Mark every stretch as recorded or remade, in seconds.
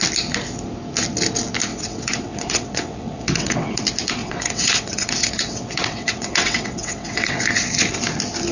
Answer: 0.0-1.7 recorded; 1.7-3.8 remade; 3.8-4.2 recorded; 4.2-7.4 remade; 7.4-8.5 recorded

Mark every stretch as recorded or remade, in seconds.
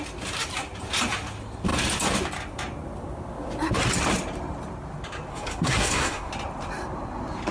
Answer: 0.0-5.3 recorded; 5.3-6.3 remade; 6.3-7.5 recorded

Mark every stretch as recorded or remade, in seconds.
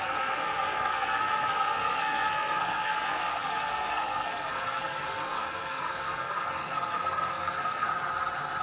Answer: 0.0-7.9 remade; 7.9-8.6 recorded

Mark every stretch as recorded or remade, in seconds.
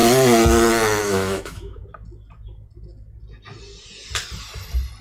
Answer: 0.0-1.0 recorded; 1.0-1.8 remade; 1.8-5.0 recorded